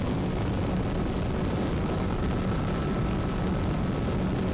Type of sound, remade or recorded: recorded